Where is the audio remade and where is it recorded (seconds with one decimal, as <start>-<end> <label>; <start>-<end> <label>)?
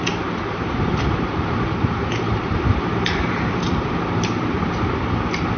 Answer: 0.0-0.5 recorded; 0.5-3.9 remade; 3.9-5.6 recorded